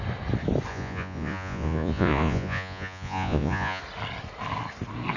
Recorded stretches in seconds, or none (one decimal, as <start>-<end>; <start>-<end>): 0.0-0.7; 3.8-5.2